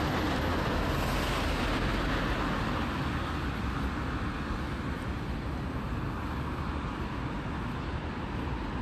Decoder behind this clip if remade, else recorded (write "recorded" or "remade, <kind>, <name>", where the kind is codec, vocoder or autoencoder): recorded